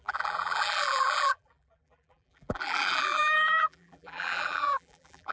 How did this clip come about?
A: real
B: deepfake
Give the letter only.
B